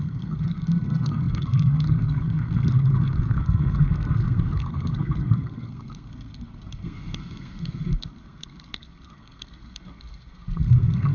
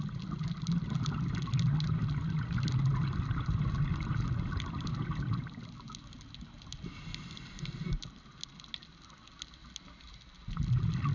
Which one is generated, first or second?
first